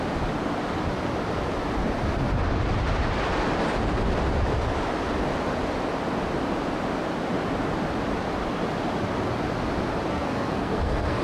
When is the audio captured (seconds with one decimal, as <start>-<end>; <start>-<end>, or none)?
0.0-10.1